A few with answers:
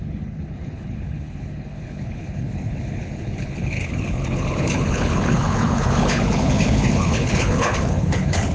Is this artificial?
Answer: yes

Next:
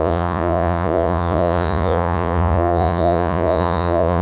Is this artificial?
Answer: yes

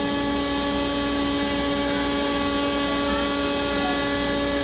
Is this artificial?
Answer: no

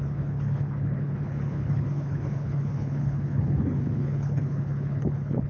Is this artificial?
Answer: yes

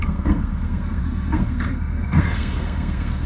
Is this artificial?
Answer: yes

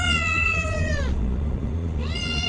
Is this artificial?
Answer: yes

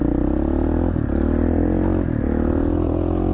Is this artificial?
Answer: no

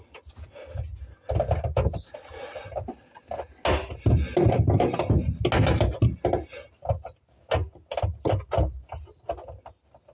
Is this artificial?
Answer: no